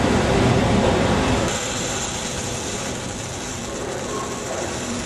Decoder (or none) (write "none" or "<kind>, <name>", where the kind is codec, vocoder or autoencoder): vocoder, BigVGAN v2